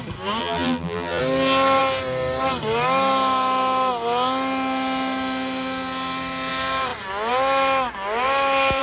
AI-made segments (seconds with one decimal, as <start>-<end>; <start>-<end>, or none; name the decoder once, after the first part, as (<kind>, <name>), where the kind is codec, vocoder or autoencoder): 0.4-1.2 (vocoder, BigVGAN v2)